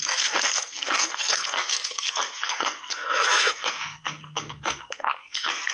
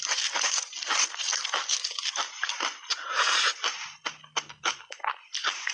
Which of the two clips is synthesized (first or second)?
first